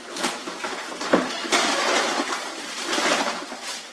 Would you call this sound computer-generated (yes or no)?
no